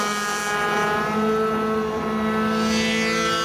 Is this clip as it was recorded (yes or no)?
yes